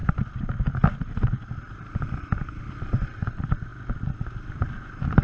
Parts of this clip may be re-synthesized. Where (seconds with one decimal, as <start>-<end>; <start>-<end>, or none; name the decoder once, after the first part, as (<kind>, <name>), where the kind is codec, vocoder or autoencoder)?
none

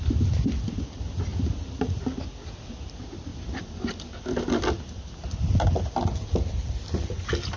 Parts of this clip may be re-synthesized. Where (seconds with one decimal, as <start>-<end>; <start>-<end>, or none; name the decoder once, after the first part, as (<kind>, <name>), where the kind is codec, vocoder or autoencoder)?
none

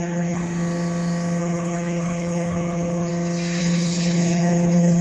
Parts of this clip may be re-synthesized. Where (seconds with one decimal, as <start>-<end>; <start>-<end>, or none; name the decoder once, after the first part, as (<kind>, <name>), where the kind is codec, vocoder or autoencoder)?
0.0-0.4 (codec, HILCodec); 1.4-3.1; 3.6-5.0